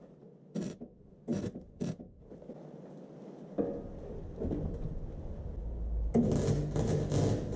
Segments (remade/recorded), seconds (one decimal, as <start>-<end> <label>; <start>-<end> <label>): 0.0-7.6 recorded